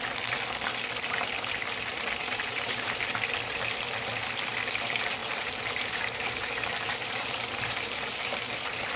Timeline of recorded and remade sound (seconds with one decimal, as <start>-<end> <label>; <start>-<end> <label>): 0.0-1.9 recorded; 1.9-3.1 remade; 3.1-5.2 recorded; 5.2-9.0 remade